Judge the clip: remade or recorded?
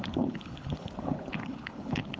remade